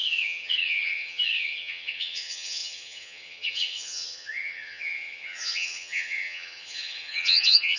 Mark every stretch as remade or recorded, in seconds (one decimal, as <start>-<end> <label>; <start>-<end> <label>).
0.0-7.8 remade